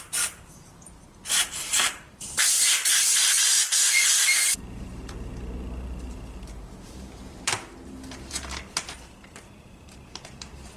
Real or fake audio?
fake